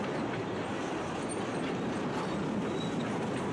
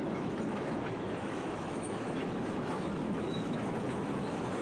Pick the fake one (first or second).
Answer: second